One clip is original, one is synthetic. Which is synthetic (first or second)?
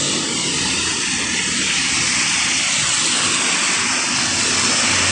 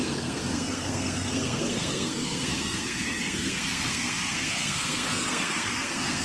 second